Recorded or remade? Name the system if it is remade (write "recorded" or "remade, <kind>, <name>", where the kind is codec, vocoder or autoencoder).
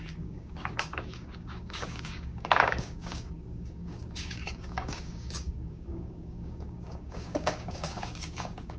remade, codec, DAC